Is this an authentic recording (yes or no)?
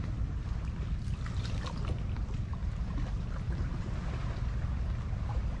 yes